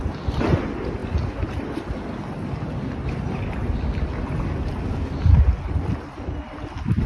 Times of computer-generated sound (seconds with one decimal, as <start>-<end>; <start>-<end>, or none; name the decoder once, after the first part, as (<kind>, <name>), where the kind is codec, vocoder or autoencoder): none